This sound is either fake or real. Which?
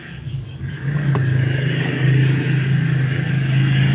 fake